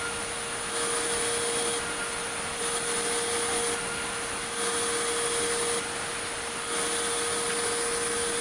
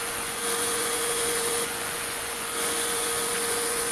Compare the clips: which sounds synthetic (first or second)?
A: second